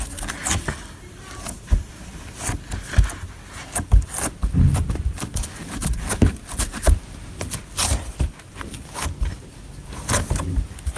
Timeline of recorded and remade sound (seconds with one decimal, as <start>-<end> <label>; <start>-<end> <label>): 0.0-11.0 recorded

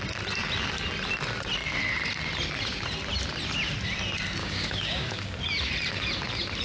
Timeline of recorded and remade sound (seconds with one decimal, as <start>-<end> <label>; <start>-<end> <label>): 0.0-4.4 recorded; 4.4-5.4 remade; 5.4-6.6 recorded

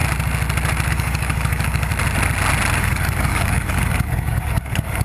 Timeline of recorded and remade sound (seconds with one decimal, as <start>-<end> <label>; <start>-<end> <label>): 0.0-0.9 recorded; 0.9-1.9 remade; 1.9-2.8 recorded; 2.8-5.0 remade

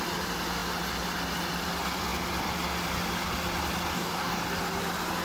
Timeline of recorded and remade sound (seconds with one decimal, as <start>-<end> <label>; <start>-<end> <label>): 0.0-3.9 recorded; 3.9-4.4 remade; 4.4-5.2 recorded

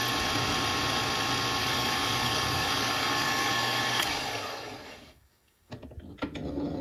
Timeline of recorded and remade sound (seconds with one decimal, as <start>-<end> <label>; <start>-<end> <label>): 0.0-1.6 recorded; 1.6-5.7 remade; 5.7-6.8 recorded

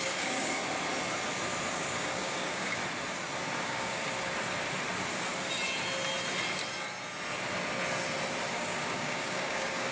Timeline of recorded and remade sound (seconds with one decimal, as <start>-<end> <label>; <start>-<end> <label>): 0.0-0.6 remade; 0.6-1.7 recorded; 1.7-2.8 remade; 2.8-3.6 recorded; 3.6-4.0 remade; 4.0-8.5 recorded; 8.5-9.9 remade